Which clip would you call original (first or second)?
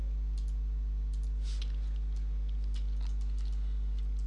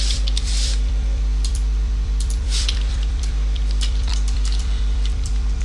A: first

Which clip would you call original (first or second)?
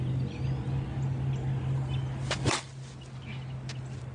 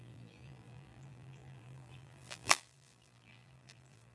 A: first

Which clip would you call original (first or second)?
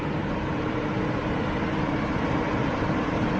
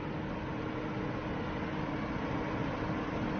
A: second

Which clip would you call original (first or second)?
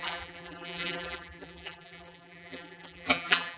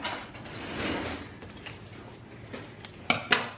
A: second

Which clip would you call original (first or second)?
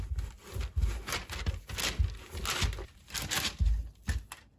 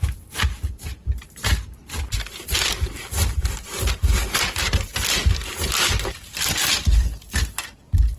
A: first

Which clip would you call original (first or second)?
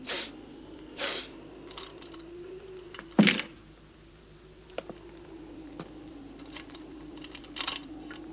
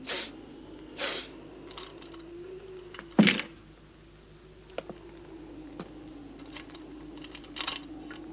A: second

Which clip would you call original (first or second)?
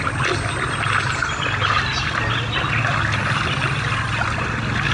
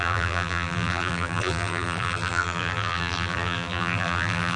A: first